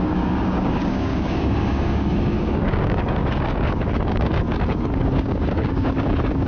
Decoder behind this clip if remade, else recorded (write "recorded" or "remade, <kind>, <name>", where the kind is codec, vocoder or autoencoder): remade, codec, DAC